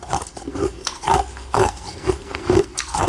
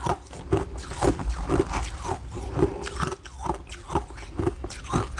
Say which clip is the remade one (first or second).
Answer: first